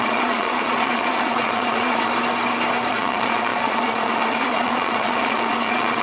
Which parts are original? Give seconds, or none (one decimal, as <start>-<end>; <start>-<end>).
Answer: 2.1-2.9